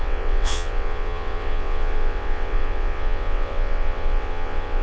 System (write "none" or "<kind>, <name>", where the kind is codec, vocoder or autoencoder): vocoder, WaveNeXt